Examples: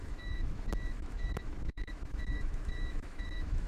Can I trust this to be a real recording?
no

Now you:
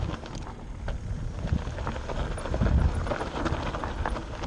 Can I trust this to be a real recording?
yes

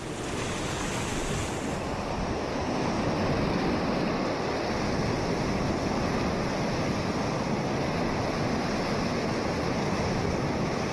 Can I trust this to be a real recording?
yes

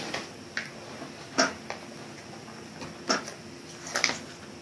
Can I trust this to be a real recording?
yes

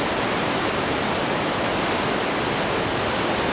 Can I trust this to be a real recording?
yes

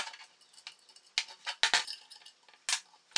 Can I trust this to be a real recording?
yes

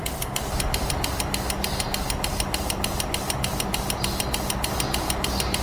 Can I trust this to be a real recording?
yes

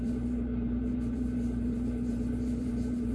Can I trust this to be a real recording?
no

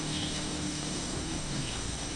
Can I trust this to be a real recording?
no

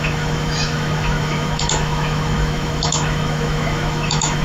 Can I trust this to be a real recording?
no